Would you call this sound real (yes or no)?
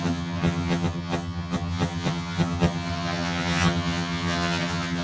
no